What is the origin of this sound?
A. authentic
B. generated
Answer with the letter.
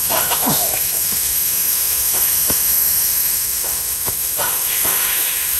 B